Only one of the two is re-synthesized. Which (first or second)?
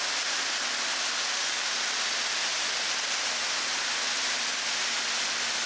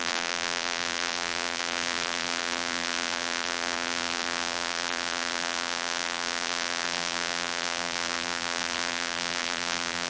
second